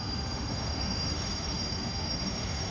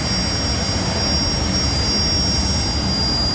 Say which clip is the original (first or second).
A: second